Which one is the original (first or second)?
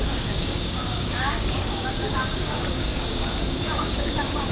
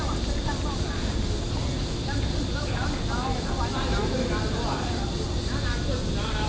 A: second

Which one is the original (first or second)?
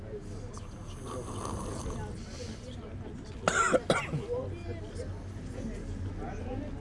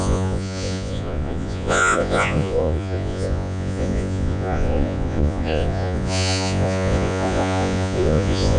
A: first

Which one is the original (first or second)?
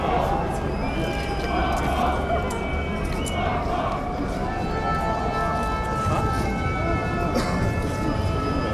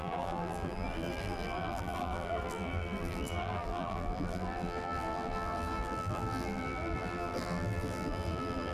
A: first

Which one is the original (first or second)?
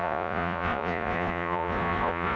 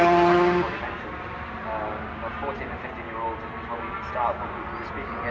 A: second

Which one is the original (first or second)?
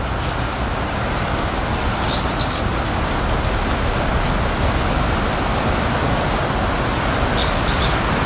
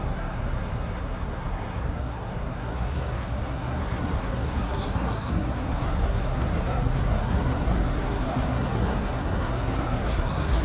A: first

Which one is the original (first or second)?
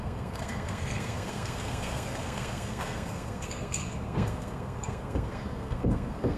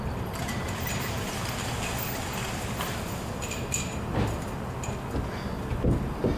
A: second